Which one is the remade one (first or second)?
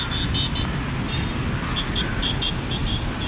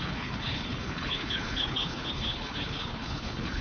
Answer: second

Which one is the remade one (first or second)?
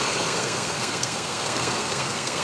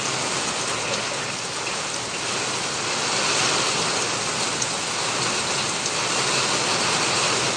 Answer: first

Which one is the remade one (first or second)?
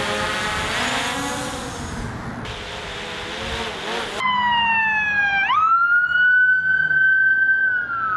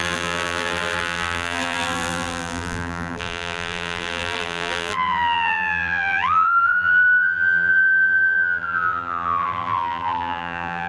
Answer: second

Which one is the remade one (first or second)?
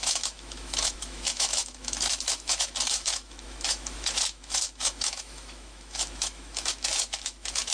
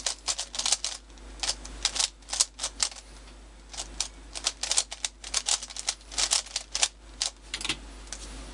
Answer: first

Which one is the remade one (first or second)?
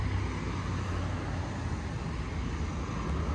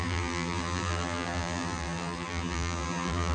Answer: second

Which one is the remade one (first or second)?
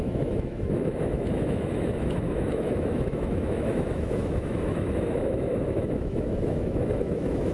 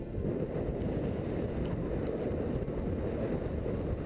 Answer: first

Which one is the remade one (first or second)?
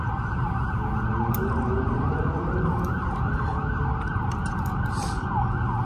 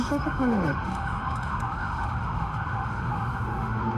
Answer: second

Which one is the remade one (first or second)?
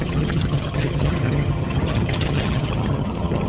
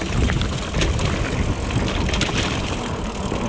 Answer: first